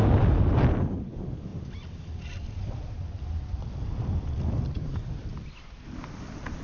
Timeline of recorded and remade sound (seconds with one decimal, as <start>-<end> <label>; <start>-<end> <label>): 0.0-6.6 recorded